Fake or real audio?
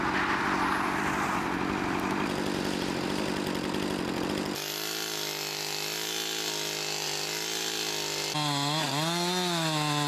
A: real